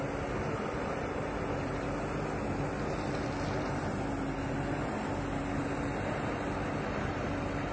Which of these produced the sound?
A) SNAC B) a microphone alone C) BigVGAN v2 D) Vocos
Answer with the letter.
B